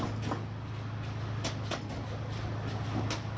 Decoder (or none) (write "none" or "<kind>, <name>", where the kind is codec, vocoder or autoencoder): none